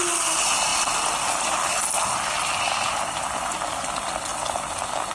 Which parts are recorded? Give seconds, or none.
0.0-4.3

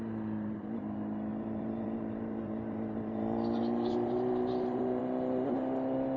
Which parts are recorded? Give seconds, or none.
0.0-1.3; 5.0-6.2

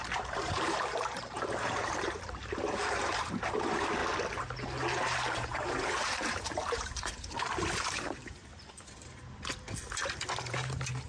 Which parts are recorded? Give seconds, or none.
4.0-5.0; 9.2-10.5